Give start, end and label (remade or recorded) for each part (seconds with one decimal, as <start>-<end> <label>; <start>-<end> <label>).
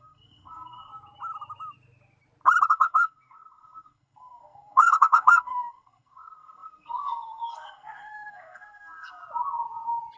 0.0-0.9 remade; 0.9-2.7 recorded; 2.7-9.2 remade; 9.2-10.2 recorded